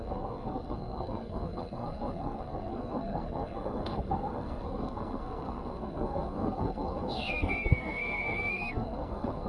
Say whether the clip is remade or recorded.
remade